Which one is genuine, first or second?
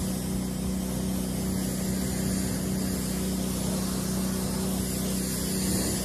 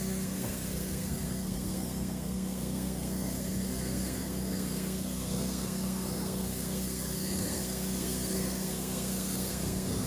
first